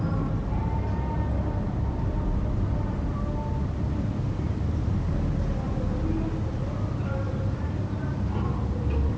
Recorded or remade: recorded